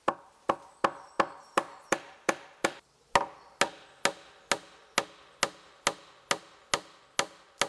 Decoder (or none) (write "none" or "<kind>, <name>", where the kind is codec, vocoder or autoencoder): none